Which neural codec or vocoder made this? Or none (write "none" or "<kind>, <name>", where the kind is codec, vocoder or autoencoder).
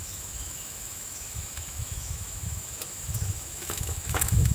autoencoder, DAC-VAE